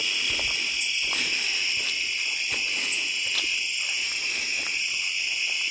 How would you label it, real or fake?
real